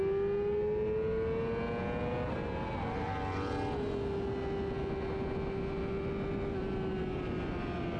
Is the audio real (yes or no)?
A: yes